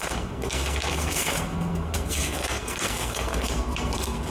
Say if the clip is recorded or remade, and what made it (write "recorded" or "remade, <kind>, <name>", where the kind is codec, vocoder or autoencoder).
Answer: remade, codec, SNAC